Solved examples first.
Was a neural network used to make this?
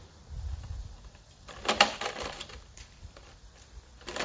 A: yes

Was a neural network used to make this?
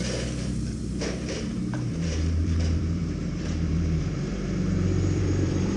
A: yes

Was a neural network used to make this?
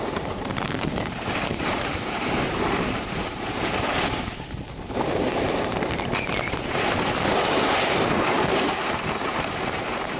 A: yes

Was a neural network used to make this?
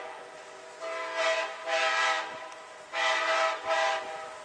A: no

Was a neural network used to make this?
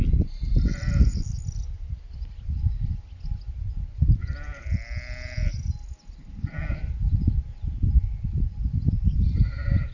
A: no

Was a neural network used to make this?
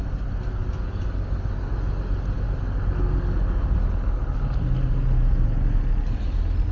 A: no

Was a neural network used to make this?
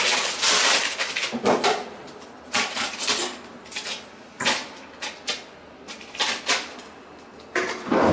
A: no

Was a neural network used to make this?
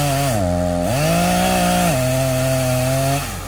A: no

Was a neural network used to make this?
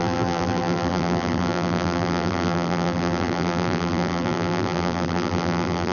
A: yes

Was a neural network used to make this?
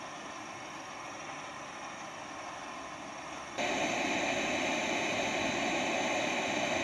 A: no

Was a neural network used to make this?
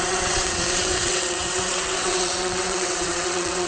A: yes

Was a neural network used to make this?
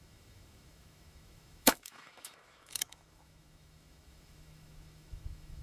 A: yes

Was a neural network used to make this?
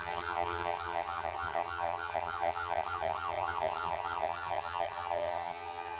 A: yes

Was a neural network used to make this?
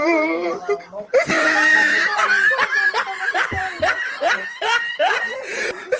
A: yes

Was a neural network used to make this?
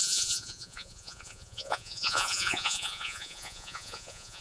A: yes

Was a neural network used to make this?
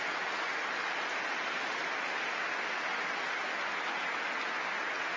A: no